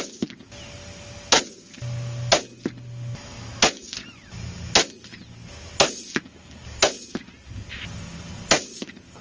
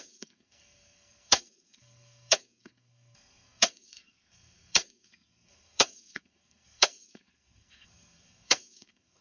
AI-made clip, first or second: second